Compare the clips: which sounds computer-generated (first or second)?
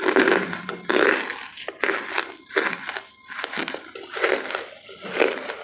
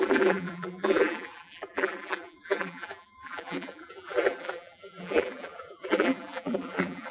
second